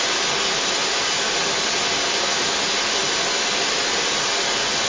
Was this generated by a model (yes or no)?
no